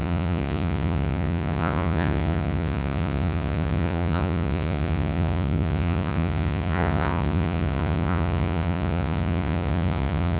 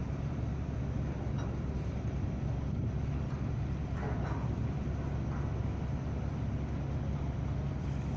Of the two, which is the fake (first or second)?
first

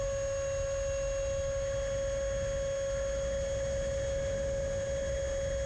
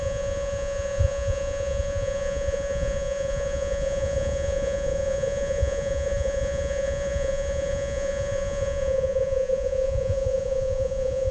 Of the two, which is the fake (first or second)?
second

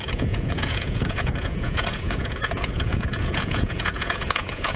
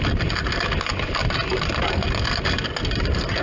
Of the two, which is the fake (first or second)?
first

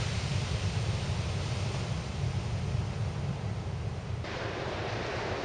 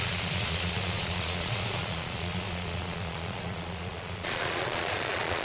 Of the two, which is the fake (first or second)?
second